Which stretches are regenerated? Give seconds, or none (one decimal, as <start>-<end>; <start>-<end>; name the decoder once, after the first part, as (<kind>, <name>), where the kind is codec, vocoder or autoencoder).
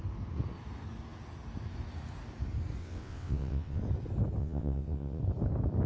2.8-3.8 (vocoder, WaveNeXt); 4.4-5.2